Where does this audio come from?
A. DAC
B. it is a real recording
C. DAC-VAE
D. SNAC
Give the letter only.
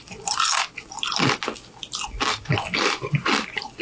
B